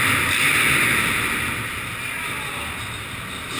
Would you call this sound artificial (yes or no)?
no